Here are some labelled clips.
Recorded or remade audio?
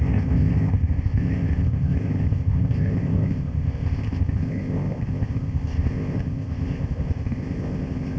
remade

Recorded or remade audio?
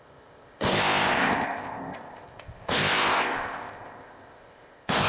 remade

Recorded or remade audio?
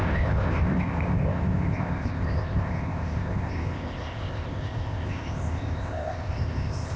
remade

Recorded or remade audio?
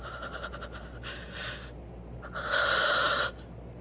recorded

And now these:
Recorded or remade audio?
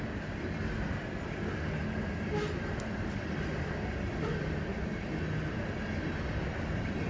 recorded